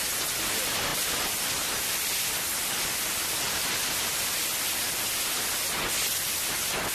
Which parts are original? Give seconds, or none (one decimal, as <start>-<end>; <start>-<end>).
0.0-6.9